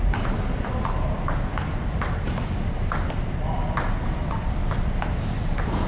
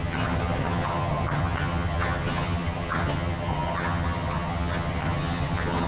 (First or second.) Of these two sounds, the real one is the first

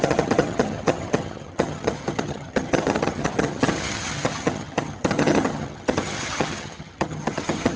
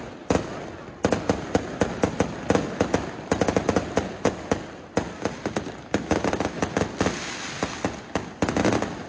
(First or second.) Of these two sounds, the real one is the second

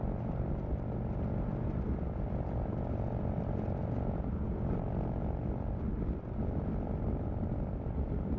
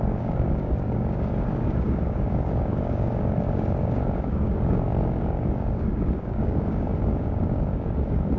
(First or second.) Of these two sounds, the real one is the first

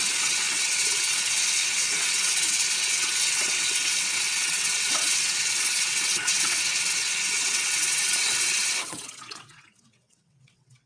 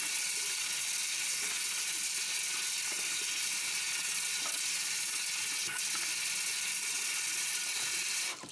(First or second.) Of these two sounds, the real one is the second